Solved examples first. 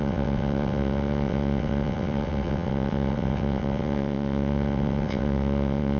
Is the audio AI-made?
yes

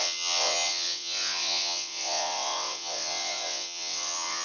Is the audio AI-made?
yes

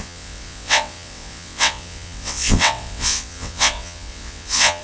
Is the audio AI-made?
yes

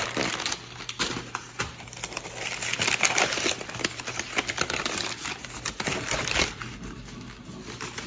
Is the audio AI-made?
no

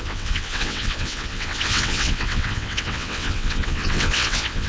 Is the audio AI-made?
yes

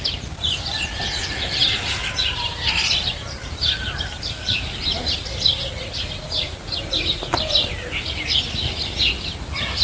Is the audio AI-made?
no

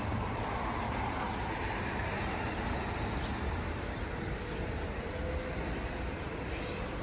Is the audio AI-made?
no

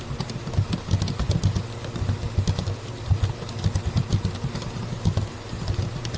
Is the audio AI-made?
no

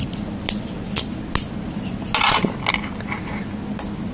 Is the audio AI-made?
no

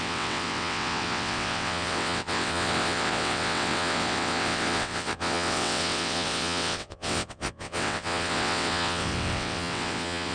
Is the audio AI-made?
yes